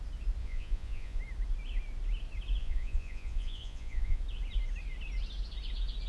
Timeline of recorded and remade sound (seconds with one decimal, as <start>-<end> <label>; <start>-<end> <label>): 0.0-0.4 recorded; 0.4-1.2 remade; 1.2-2.6 recorded; 2.6-4.2 remade; 4.2-6.1 recorded